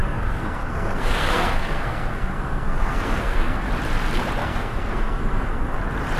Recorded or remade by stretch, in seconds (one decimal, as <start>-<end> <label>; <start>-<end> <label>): 0.0-3.7 remade; 3.7-4.4 recorded; 4.4-5.8 remade; 5.8-6.2 recorded